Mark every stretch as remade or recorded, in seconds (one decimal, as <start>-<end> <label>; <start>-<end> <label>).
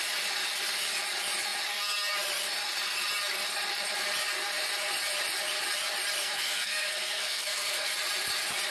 0.0-6.2 recorded; 6.2-7.9 remade; 7.9-8.7 recorded